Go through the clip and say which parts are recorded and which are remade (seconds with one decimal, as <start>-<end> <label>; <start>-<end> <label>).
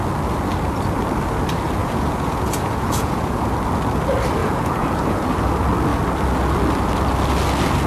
0.0-1.8 recorded; 1.8-3.5 remade; 3.5-4.4 recorded; 4.4-5.3 remade; 5.3-7.9 recorded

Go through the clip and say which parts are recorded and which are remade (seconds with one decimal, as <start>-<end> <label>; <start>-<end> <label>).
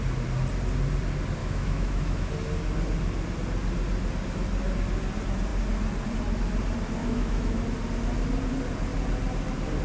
0.0-1.4 recorded; 1.4-2.3 remade; 2.3-7.0 recorded; 7.0-7.6 remade; 7.6-9.8 recorded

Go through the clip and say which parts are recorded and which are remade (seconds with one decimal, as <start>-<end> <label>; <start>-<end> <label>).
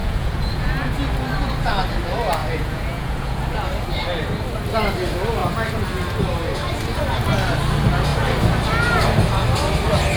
0.0-0.7 remade; 0.7-2.4 recorded; 2.4-3.4 remade; 3.4-10.2 recorded